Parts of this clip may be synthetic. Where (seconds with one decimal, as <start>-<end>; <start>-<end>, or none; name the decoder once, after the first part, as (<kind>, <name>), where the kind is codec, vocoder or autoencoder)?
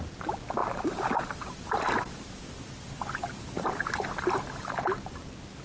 none